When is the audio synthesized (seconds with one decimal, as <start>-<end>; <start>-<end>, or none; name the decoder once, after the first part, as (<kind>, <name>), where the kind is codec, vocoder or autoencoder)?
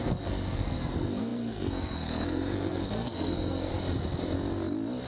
0.0-3.7 (codec, SNAC)